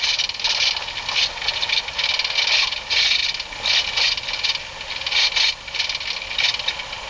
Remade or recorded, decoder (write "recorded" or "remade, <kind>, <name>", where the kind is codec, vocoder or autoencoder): recorded